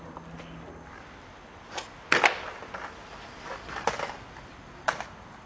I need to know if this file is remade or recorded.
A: recorded